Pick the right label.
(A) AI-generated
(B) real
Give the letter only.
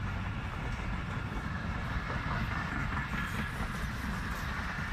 B